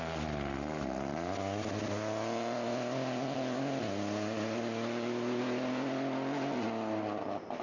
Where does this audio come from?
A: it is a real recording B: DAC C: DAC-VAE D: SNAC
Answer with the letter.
A